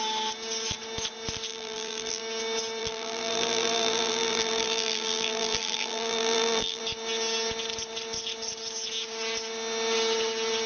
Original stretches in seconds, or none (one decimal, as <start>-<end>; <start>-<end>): 0.0-1.5; 2.2-2.8; 6.8-10.7